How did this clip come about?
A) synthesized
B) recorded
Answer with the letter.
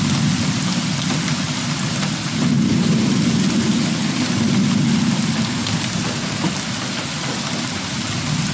B